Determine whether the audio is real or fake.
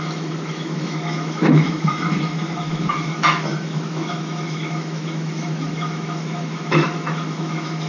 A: fake